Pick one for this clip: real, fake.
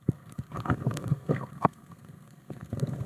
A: fake